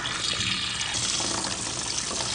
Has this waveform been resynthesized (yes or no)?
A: no